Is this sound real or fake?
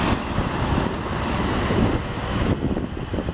real